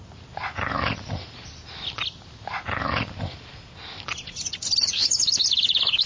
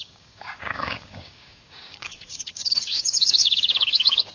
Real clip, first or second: first